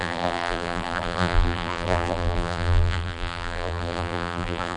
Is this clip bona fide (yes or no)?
no